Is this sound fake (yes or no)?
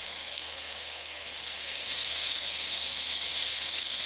yes